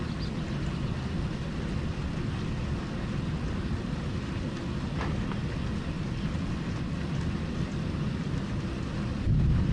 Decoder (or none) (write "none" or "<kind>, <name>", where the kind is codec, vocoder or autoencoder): none